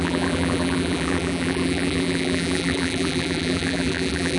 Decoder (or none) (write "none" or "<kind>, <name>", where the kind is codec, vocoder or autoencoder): vocoder, BigVGAN v2